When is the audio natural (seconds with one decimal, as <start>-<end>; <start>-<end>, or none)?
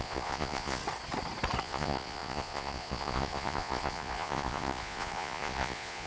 0.8-1.6